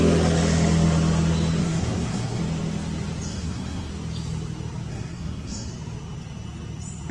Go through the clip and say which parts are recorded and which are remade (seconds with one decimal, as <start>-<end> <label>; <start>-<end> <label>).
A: 0.0-1.6 recorded; 1.6-2.4 remade; 2.4-3.3 recorded; 3.3-3.9 remade; 3.9-4.9 recorded; 4.9-5.7 remade; 5.7-7.1 recorded